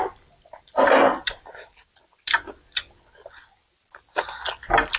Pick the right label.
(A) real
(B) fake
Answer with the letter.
A